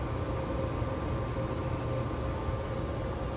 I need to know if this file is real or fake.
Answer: real